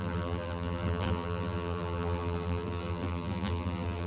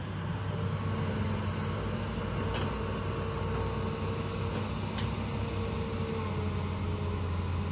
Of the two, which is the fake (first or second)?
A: first